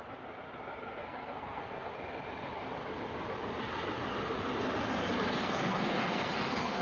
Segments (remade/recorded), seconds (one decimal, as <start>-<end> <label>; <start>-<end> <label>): 0.0-1.0 recorded; 1.0-1.9 remade; 1.9-5.4 recorded; 5.4-6.8 remade